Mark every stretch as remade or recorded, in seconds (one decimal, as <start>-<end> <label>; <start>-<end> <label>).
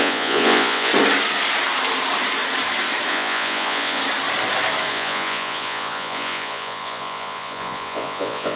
0.0-0.9 remade; 0.9-3.1 recorded; 3.1-4.0 remade; 4.0-4.9 recorded; 4.9-8.6 remade